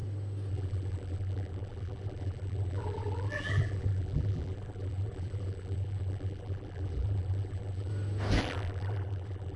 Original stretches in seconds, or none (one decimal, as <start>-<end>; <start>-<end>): 0.0-0.5; 7.9-8.4